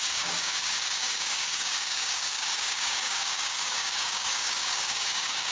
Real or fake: fake